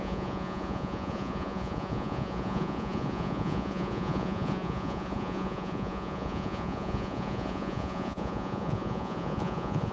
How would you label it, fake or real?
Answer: fake